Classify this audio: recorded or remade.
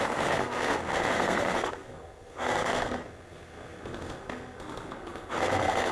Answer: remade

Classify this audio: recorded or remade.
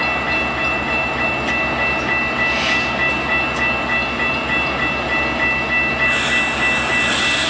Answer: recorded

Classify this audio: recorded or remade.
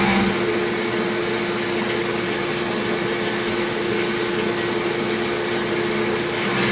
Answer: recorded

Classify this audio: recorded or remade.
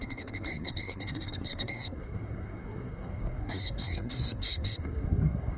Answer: remade